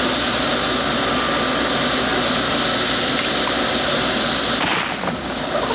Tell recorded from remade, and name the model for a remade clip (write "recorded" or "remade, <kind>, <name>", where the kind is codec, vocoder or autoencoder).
recorded